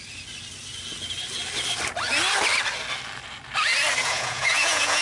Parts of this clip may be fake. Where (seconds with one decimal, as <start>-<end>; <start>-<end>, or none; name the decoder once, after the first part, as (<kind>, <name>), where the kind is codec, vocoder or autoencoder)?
4.0-5.0 (vocoder, Vocos)

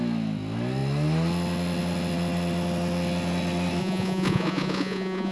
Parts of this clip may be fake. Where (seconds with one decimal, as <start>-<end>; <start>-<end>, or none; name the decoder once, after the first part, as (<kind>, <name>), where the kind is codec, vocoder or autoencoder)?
3.8-5.3 (vocoder, Vocos)

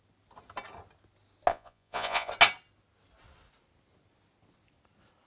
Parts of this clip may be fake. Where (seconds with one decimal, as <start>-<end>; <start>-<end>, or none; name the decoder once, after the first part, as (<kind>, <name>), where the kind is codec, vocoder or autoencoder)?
1.5-2.3 (vocoder, Vocos)

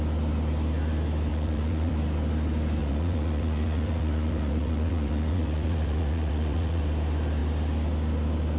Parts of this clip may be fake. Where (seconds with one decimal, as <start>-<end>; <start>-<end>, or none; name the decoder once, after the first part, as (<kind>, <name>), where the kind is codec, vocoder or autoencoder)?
1.3-1.9 (vocoder, Vocos); 2.8-6.8

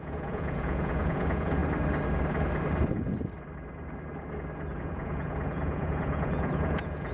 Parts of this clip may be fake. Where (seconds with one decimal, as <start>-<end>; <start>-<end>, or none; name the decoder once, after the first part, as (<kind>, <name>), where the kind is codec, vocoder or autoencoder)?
0.0-1.6 (vocoder, Vocos); 4.8-7.1